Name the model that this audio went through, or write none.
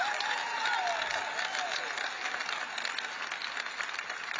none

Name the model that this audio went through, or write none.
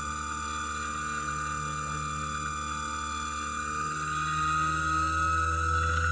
none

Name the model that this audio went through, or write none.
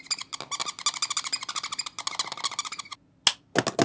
none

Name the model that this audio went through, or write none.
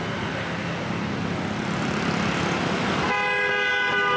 none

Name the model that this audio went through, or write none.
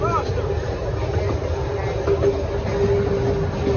none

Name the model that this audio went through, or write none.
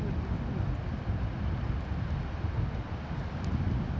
none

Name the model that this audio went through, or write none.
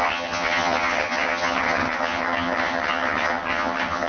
vocoder, HiFi-GAN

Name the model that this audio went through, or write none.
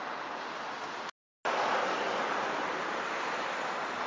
none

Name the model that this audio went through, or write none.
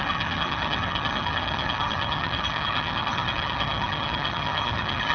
vocoder, HiFi-GAN